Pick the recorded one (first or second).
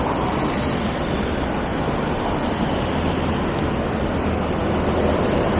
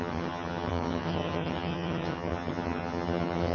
first